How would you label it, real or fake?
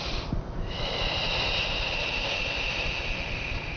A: real